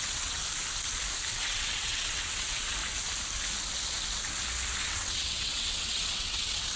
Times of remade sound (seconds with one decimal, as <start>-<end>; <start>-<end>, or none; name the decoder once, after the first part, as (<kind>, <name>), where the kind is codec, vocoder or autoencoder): 0.0-0.4 (vocoder, WaveNeXt); 1.3-2.8; 4.8-6.8